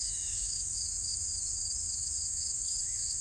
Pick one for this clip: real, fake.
fake